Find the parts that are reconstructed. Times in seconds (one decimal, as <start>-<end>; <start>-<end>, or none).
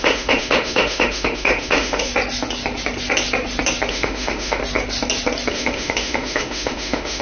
0.0-2.1; 3.9-4.6; 5.5-7.2